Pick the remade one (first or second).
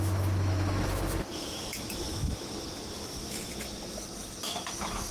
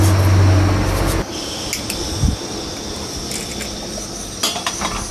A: first